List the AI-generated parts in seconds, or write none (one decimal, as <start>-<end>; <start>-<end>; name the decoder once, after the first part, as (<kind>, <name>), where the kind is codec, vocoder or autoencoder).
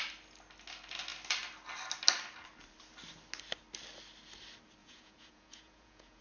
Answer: 4.8-6.2 (vocoder, Vocos)